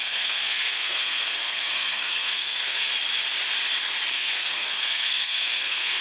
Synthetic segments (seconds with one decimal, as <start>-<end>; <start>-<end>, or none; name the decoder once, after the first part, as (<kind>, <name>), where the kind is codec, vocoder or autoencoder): 0.0-2.9 (codec, SNAC); 4.1-6.0